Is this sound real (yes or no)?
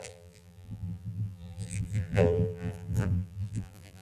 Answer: no